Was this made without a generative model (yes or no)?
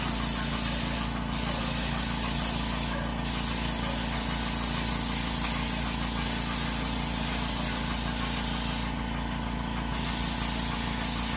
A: yes